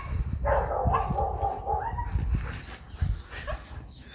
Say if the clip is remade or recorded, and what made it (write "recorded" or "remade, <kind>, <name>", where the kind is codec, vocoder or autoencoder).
recorded